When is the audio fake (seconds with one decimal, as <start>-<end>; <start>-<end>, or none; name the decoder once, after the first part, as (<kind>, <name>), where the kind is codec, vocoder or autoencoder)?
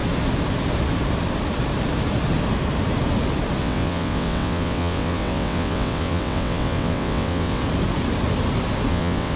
3.6-7.6 (vocoder, WaveNeXt); 8.9-9.4